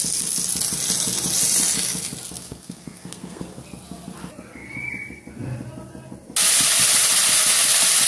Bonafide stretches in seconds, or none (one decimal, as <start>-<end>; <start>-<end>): 0.0-2.4; 3.6-8.1